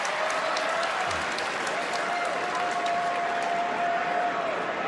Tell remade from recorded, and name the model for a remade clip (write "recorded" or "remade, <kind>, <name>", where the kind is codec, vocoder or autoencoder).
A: recorded